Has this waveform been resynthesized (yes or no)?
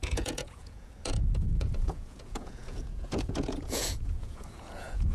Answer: yes